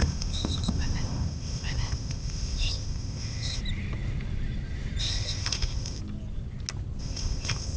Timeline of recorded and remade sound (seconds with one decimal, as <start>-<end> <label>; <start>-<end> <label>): 0.0-3.6 remade; 3.6-5.0 recorded; 5.0-6.0 remade; 6.0-7.0 recorded; 7.0-7.8 remade